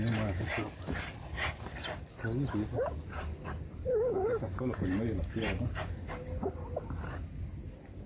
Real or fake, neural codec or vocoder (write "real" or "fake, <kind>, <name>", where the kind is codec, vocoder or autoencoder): real